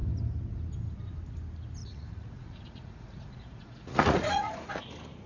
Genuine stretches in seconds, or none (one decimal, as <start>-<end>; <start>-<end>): 0.0-1.8; 4.7-5.3